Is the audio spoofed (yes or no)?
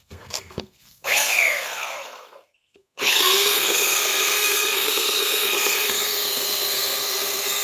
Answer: yes